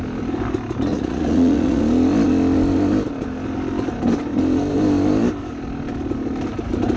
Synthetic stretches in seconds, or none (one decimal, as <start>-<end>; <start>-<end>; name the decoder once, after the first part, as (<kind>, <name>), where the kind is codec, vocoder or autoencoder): 0.9-1.8 (vocoder, Vocos)